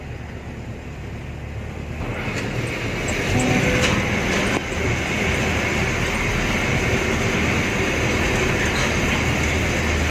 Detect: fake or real real